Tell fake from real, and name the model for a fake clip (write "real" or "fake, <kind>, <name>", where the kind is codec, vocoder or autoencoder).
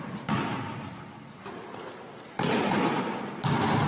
real